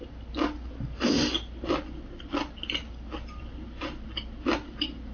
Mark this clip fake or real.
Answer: real